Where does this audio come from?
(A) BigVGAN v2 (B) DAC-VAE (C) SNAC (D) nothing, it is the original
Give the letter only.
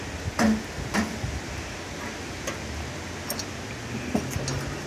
D